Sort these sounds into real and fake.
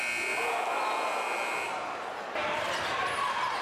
real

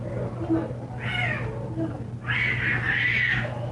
real